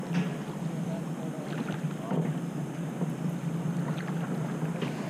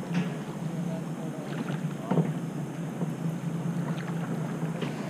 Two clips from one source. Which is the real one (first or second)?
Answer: second